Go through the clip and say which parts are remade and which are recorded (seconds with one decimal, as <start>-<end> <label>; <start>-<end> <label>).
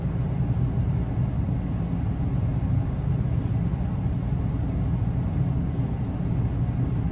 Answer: 0.0-7.1 recorded